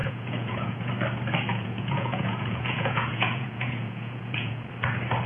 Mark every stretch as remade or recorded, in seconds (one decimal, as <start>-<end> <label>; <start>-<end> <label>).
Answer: 0.0-0.9 remade; 0.9-1.5 recorded; 1.5-4.7 remade; 4.7-5.3 recorded